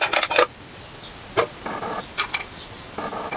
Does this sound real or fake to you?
real